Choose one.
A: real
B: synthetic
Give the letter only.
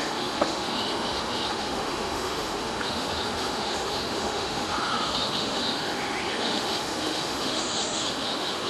B